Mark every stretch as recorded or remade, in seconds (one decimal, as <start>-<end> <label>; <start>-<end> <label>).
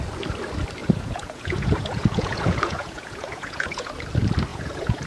0.0-0.8 recorded; 0.8-3.9 remade; 3.9-4.5 recorded; 4.5-5.1 remade